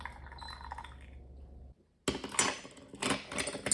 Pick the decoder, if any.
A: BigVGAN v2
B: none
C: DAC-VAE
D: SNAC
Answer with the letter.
B